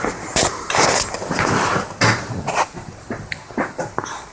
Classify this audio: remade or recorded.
recorded